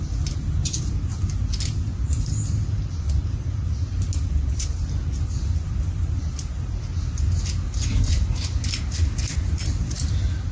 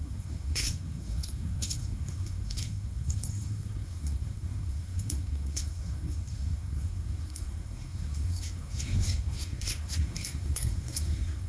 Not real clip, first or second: second